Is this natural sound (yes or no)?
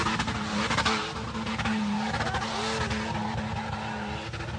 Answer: yes